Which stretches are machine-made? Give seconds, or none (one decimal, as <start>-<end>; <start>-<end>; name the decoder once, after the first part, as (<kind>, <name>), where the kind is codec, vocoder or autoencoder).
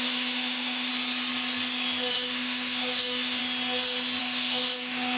0.0-0.9 (autoencoder, DAC-VAE); 2.1-3.4; 4.2-5.2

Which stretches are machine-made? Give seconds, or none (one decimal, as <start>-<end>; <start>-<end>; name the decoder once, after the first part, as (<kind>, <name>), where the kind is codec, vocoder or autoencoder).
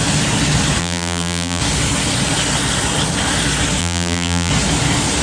0.8-1.6 (vocoder, BigVGAN v2); 3.8-4.5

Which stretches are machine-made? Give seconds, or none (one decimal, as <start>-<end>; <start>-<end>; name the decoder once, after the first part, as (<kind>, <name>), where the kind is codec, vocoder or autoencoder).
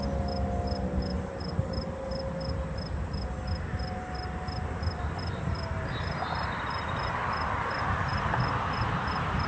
none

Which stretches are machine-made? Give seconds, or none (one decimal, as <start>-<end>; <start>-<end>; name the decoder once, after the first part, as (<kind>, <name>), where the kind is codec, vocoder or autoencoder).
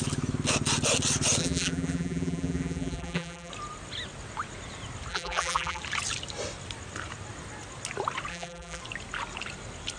1.4-3.5 (vocoder, BigVGAN v2); 5.1-5.8; 8.3-8.8